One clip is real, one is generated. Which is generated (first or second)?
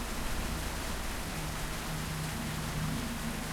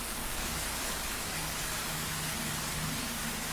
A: second